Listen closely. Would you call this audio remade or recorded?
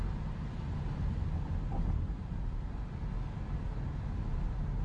recorded